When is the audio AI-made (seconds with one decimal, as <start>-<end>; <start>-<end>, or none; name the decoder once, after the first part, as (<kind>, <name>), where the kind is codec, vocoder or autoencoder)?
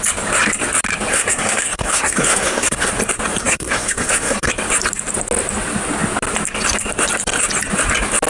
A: 1.1-2.9 (codec, SNAC); 3.4-4.5